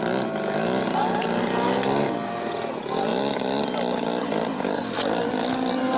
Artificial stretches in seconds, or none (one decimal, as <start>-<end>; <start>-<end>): 1.0-2.1